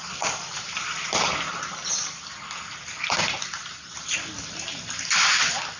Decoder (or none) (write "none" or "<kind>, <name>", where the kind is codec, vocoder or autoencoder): none